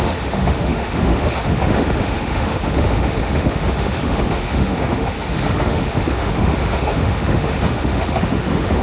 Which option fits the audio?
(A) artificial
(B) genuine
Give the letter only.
A